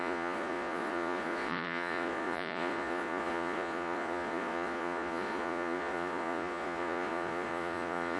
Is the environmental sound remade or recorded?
remade